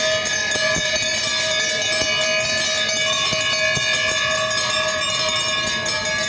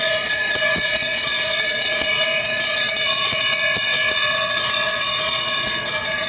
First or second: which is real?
first